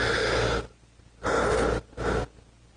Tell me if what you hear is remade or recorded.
recorded